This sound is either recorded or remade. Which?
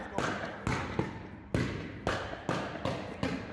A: recorded